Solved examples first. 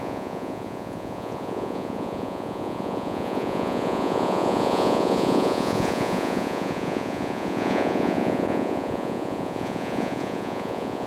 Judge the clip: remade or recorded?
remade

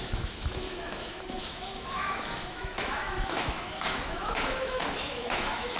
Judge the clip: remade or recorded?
remade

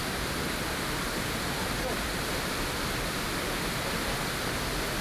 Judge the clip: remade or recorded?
recorded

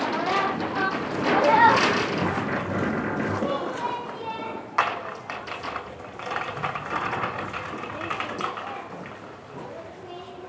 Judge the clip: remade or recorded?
recorded